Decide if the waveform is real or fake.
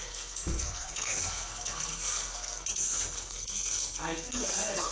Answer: fake